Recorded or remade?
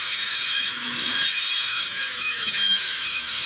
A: remade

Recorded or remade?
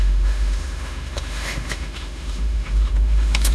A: remade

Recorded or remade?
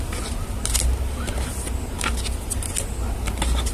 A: recorded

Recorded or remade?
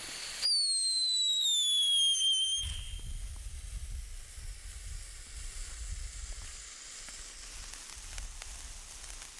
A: recorded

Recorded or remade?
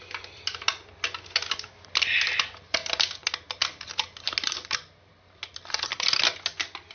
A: recorded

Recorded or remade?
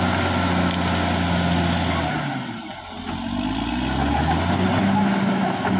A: recorded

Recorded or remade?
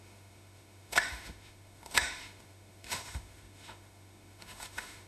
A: remade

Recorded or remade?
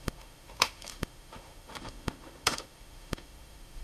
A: remade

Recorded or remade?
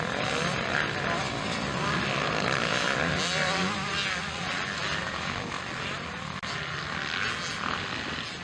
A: recorded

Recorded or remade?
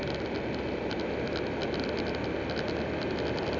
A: recorded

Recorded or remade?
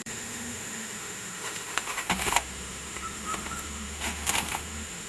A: remade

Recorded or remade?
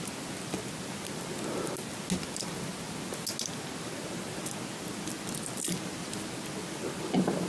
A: recorded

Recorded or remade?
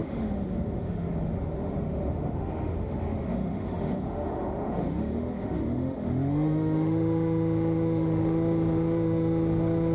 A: remade